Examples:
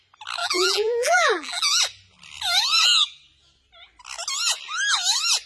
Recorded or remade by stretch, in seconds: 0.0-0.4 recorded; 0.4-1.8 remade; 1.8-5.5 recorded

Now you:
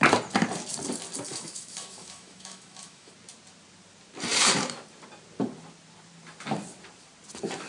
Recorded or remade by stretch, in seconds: 0.0-1.3 recorded; 1.3-3.1 remade; 3.1-7.7 recorded

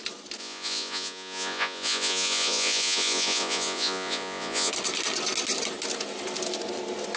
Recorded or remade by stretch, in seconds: 0.0-0.4 recorded; 0.4-4.7 remade; 4.7-7.2 recorded